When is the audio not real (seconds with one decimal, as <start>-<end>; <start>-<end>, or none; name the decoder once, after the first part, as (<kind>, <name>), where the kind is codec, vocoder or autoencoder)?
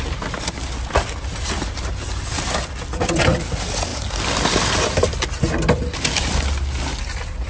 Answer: none